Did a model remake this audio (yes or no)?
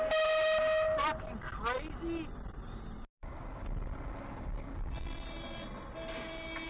no